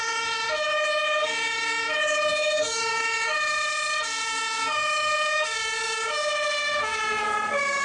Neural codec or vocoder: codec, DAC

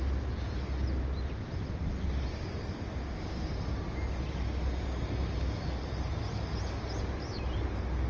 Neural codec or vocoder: none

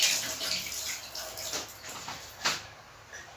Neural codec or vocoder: none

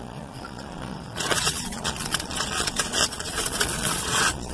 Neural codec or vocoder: vocoder, Vocos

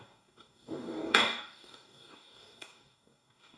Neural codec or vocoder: codec, DAC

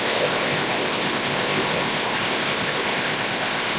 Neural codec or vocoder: codec, ZipCodec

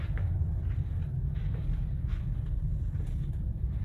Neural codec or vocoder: none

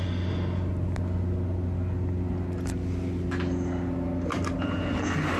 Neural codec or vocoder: none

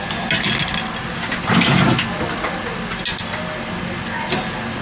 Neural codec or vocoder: none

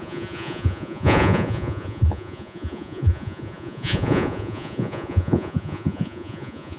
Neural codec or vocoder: vocoder, Vocos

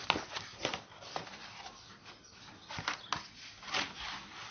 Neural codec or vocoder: none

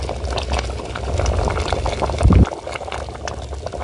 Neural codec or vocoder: none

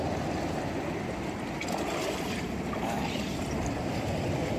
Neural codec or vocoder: none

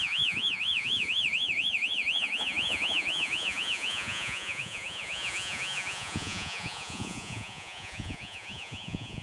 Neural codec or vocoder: vocoder, Vocos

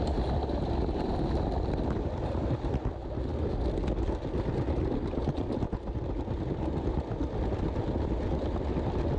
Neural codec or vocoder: none